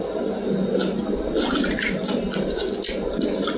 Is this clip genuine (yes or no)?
yes